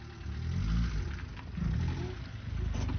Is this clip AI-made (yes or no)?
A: no